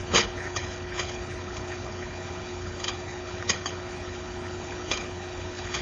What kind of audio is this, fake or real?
fake